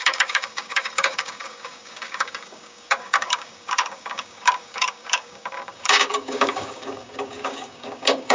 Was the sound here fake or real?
fake